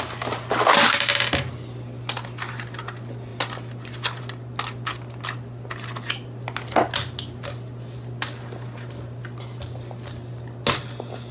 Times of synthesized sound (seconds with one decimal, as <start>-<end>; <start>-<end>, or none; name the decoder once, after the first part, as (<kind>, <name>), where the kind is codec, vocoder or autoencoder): none